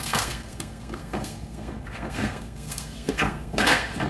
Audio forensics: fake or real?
fake